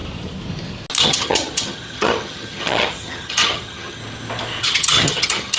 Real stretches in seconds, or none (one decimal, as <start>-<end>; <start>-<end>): 0.0-1.0; 4.0-4.6